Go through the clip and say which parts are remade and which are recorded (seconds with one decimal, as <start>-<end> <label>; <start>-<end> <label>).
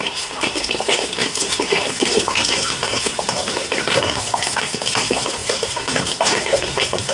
0.0-7.1 remade